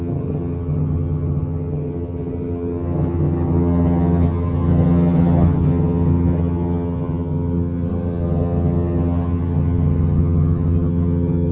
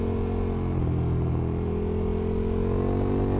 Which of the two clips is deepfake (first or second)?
first